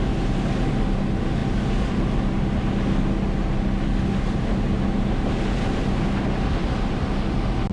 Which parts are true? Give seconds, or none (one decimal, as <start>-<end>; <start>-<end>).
0.0-7.7